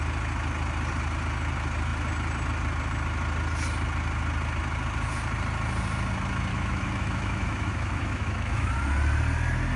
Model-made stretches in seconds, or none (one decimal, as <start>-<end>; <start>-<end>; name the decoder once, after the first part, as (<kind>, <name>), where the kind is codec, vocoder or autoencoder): 6.5-8.7 (autoencoder, DAC-VAE)